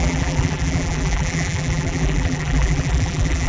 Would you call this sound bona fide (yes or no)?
no